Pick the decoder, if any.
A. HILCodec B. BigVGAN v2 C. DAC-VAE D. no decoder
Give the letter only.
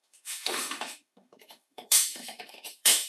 C